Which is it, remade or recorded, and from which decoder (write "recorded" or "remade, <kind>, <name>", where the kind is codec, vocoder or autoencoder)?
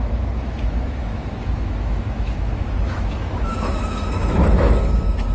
remade, autoencoder, DAC-VAE